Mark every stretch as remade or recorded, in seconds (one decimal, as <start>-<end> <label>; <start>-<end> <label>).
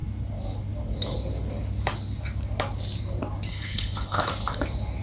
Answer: 0.0-3.5 recorded; 3.5-4.3 remade; 4.3-5.0 recorded